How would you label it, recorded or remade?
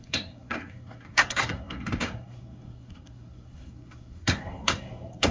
remade